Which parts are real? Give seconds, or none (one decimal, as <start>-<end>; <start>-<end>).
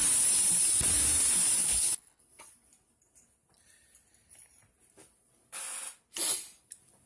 0.0-1.6; 2.2-7.1